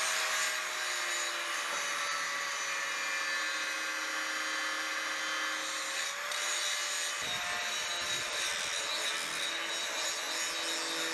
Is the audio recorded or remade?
recorded